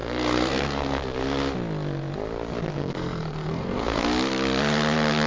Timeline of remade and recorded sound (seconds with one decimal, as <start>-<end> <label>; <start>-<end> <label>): 0.0-1.2 remade; 1.2-2.8 recorded; 2.8-4.0 remade; 4.0-5.3 recorded